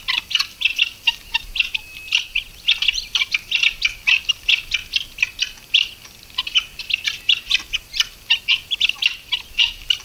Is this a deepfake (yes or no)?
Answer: no